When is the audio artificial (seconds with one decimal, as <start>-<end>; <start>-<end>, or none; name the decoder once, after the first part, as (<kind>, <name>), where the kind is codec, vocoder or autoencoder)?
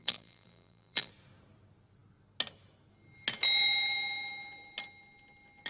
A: 0.0-1.1 (vocoder, BigVGAN v2)